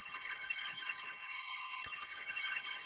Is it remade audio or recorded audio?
remade